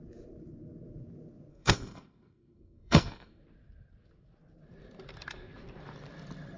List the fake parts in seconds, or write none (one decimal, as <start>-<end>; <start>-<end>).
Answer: 1.5-3.4